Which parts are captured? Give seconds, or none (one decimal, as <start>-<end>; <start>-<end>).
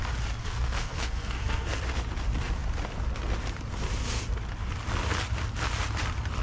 0.0-0.4; 1.8-6.4